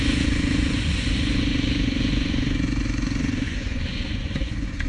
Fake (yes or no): yes